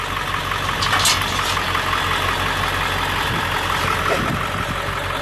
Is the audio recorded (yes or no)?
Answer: yes